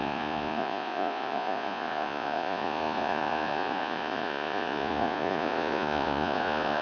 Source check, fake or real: fake